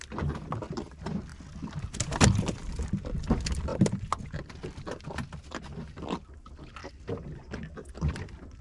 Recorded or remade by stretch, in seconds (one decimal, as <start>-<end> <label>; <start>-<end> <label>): 0.0-8.6 recorded